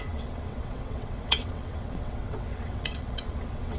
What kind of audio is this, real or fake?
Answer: fake